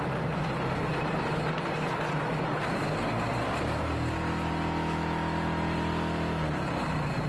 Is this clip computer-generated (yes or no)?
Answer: no